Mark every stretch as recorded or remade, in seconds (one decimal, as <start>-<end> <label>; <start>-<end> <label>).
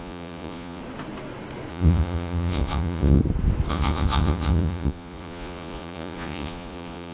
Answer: 0.0-0.8 remade; 0.8-1.7 recorded; 1.7-3.2 remade; 3.2-3.7 recorded; 3.7-7.1 remade